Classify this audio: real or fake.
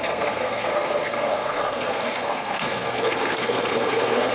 fake